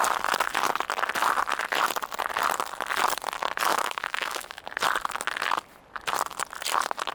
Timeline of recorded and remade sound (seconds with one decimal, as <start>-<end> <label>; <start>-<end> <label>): 0.0-3.7 recorded; 3.7-4.6 remade; 4.6-7.1 recorded